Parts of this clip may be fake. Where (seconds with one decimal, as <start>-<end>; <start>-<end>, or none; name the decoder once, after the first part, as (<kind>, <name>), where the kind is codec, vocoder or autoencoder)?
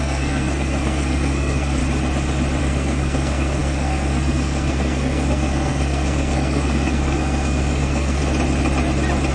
0.0-1.8 (codec, SNAC); 2.6-8.2